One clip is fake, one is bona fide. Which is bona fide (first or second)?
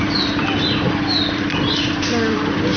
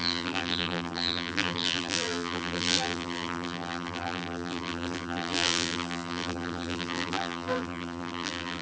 first